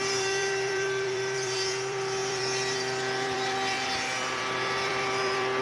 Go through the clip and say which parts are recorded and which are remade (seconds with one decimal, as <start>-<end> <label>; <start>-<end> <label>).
0.0-5.6 remade